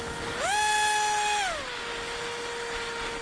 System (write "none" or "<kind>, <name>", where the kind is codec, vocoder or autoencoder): none